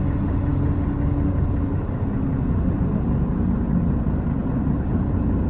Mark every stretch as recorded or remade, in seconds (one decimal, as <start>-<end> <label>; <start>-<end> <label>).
0.0-4.4 recorded; 4.4-5.0 remade; 5.0-5.5 recorded